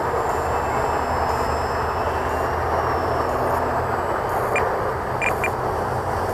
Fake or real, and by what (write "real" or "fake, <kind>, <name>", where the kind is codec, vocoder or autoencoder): real